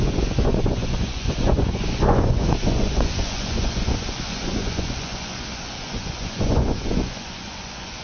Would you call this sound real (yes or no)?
no